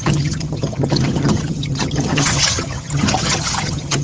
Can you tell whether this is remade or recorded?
remade